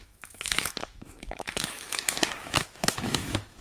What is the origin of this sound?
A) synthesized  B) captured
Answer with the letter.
A